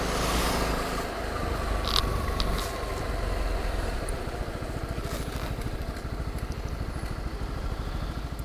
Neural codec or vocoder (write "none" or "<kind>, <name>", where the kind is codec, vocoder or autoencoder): none